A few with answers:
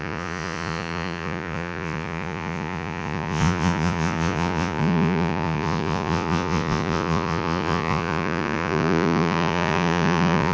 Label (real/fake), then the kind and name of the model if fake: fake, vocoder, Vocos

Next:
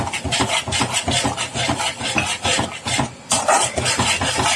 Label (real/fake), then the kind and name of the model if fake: real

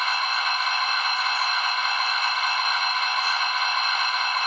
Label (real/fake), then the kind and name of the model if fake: fake, vocoder, Vocos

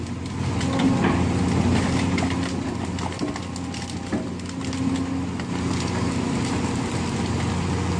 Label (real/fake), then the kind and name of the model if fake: real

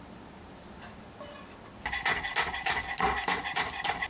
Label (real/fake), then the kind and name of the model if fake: real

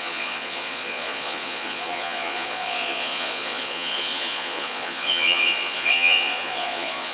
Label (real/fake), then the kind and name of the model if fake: fake, vocoder, Vocos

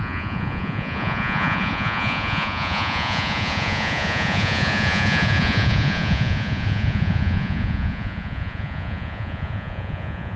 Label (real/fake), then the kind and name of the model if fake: fake, vocoder, Vocos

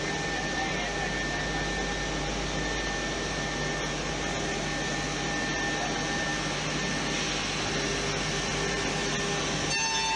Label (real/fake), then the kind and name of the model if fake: real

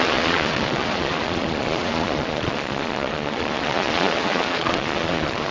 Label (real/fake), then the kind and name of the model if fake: fake, vocoder, Vocos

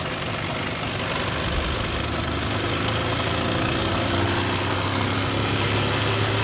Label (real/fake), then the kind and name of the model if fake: real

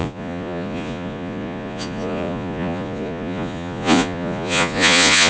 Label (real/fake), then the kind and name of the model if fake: fake, vocoder, Vocos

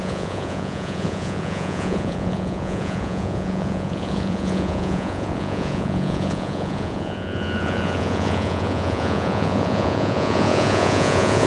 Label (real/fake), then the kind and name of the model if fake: fake, vocoder, Vocos